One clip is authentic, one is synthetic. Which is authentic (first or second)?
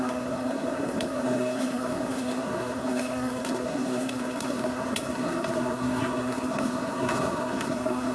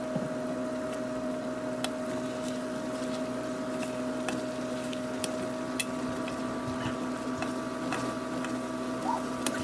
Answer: second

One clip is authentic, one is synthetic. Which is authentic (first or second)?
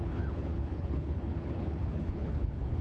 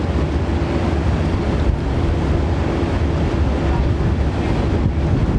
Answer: second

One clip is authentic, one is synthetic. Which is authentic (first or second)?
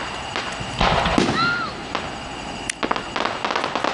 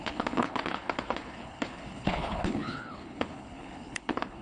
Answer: first